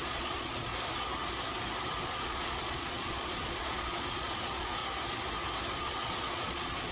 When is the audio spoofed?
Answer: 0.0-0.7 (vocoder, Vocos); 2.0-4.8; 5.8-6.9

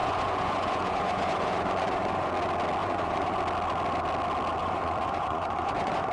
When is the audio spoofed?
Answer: 0.0-2.3 (vocoder, Vocos); 2.8-3.4; 4.6-6.1

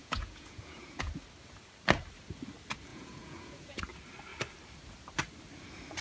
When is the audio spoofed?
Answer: 0.0-1.1 (vocoder, Vocos); 2.9-3.8

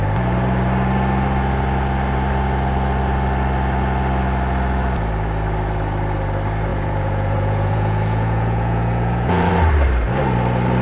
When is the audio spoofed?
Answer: 6.7-9.5 (vocoder, Vocos)